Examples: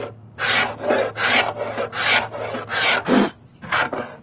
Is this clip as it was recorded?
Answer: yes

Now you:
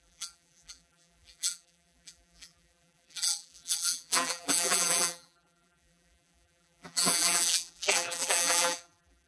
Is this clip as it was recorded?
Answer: no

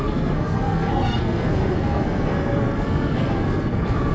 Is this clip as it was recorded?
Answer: no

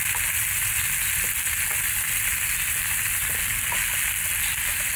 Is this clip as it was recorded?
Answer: yes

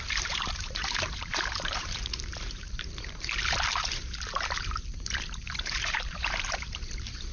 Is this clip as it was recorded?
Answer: no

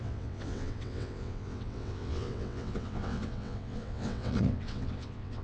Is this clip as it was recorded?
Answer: no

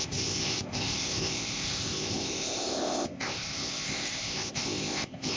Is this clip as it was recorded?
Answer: no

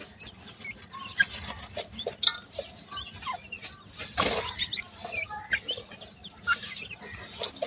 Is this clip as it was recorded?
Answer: yes